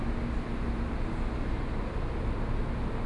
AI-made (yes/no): no